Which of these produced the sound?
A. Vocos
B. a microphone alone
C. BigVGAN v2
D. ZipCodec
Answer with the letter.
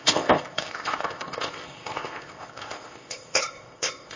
D